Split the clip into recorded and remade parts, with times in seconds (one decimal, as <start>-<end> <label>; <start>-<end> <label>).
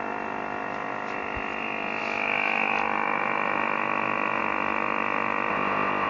0.0-5.5 recorded; 5.5-6.1 remade